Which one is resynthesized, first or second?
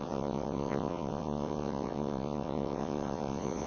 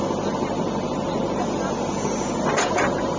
first